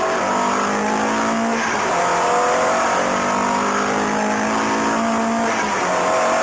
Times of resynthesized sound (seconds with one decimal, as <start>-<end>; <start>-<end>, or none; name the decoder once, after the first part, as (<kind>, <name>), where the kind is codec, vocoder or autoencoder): none